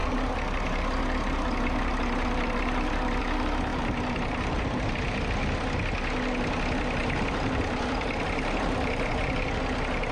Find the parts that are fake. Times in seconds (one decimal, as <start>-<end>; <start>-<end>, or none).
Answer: 0.0-3.2; 3.7-5.2; 7.0-9.1